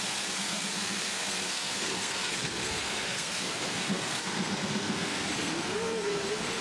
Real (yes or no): no